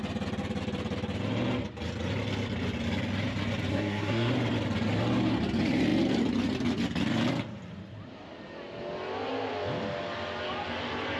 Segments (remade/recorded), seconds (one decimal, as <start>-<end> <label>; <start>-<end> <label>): 0.0-3.7 recorded; 3.7-4.3 remade; 4.3-11.2 recorded

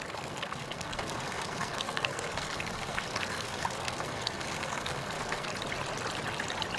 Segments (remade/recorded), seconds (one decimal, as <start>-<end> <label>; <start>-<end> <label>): 0.0-5.5 remade; 5.5-6.8 recorded

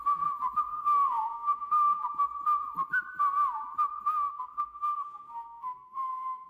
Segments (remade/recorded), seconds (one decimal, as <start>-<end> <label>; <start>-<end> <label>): 0.0-0.7 recorded; 0.7-2.0 remade; 2.0-4.3 recorded; 4.3-6.5 remade

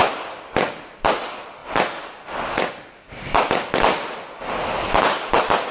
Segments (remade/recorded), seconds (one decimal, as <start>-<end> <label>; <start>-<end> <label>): 0.0-5.7 recorded